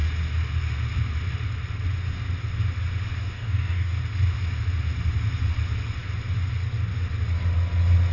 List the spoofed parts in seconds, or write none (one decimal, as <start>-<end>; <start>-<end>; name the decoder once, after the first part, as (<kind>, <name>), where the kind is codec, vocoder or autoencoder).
3.2-4.0 (codec, DAC)